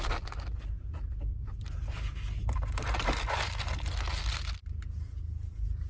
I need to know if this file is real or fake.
real